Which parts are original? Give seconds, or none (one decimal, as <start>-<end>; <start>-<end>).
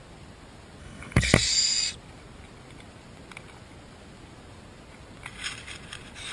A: 0.0-0.8; 1.3-6.3